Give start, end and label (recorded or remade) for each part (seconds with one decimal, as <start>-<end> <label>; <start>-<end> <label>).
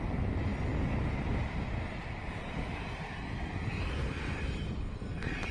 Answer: 0.0-5.5 recorded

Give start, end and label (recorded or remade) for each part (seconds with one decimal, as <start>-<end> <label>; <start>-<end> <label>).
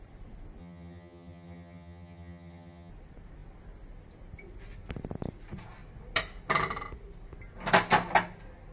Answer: 0.0-0.6 recorded; 0.6-2.9 remade; 2.9-8.7 recorded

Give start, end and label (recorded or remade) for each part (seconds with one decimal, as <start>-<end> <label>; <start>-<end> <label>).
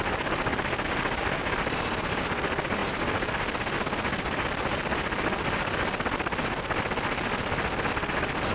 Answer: 0.0-8.5 recorded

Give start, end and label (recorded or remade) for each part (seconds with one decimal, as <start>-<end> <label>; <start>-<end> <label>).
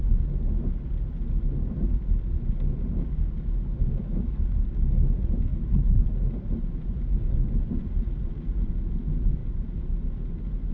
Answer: 0.0-5.5 recorded; 5.5-8.7 remade; 8.7-9.4 recorded; 9.4-10.7 remade